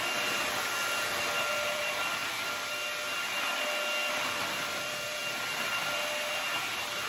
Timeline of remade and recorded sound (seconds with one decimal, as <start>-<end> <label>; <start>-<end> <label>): 0.0-2.2 remade; 2.2-4.1 recorded; 4.1-5.2 remade; 5.2-6.5 recorded; 6.5-7.1 remade